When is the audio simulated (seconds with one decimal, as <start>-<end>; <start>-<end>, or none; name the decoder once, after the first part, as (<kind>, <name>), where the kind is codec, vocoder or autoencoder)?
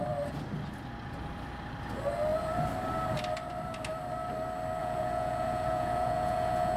4.8-6.8 (vocoder, Vocos)